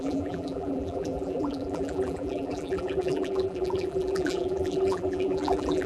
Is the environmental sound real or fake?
fake